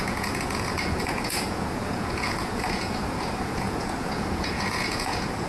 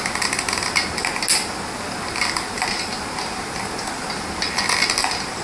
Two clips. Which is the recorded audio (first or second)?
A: second